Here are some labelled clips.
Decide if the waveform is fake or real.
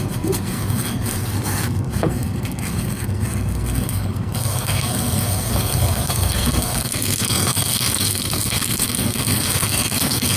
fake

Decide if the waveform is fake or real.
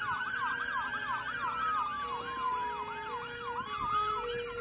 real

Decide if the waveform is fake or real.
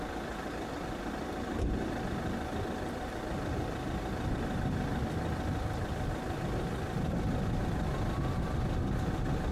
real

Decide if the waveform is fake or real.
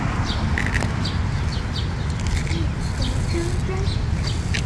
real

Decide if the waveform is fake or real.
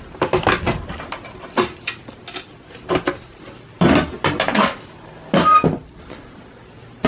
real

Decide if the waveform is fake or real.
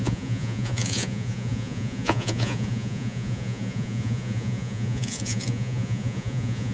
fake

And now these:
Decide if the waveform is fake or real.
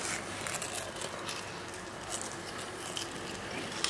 real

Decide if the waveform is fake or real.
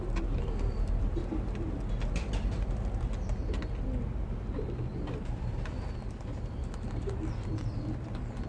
real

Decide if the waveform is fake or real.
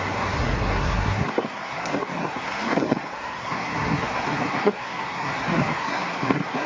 fake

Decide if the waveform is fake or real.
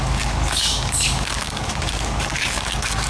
fake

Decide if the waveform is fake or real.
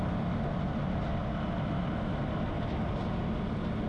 real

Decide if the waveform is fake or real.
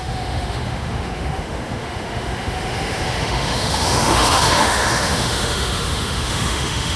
fake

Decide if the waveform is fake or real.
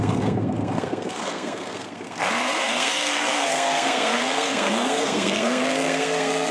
fake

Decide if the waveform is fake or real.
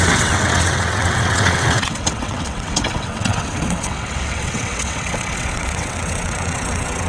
fake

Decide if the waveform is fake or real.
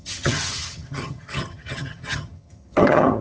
fake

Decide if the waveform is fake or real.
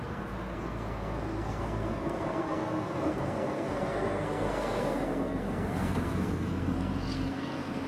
fake